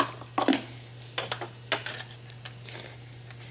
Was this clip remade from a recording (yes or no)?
no